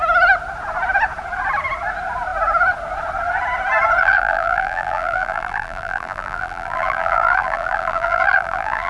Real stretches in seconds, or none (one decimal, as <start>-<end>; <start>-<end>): 0.0-4.0

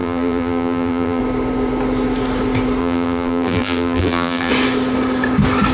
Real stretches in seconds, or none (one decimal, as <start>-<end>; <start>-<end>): 1.2-2.8; 4.5-5.7

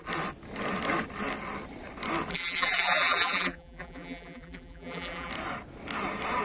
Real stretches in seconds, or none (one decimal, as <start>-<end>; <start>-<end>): 0.0-2.3; 5.3-6.4

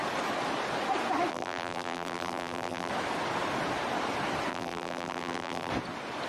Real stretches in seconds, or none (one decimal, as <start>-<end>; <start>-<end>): 0.0-1.3; 2.9-4.5; 5.7-6.3

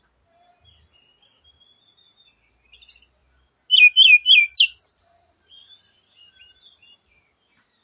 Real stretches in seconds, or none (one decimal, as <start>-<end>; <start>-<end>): 0.0-7.8

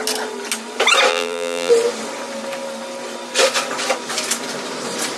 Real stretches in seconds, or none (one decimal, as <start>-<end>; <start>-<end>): 0.0-1.1; 1.7-5.2

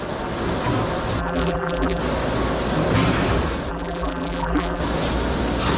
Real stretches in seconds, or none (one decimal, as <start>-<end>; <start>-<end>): 0.0-1.2; 2.0-3.7; 4.8-5.8

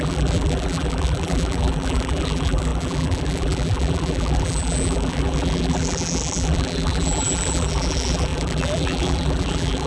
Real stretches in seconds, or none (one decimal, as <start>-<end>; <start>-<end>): none